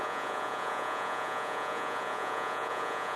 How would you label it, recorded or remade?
remade